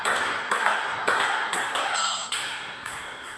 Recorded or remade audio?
remade